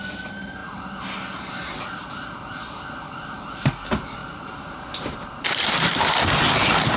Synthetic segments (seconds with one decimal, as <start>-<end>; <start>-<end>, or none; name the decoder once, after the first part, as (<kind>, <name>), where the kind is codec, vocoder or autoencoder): 4.2-6.1 (vocoder, BigVGAN v2)